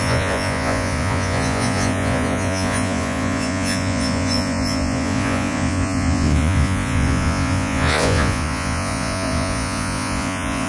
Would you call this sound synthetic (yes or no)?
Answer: yes